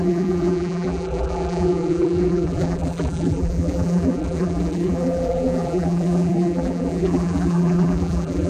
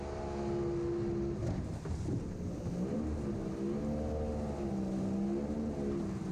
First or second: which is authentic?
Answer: second